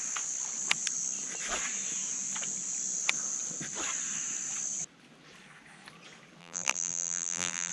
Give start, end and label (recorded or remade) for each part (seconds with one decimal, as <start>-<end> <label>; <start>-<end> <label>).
0.0-6.4 recorded; 6.4-7.7 remade